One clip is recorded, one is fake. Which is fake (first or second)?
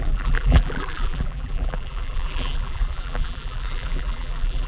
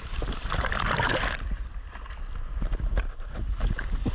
first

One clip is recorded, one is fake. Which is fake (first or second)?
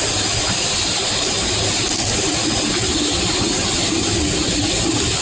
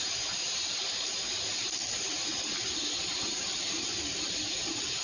second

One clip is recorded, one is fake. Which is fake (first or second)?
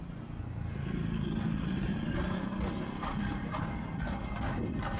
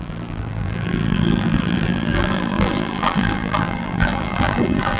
second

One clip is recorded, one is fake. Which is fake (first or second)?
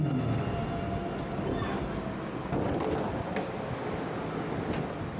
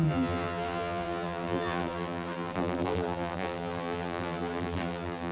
second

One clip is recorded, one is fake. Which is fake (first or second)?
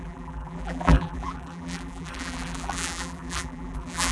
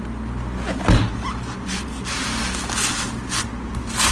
first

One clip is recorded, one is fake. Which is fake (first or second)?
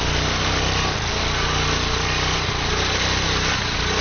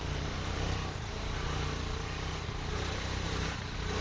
second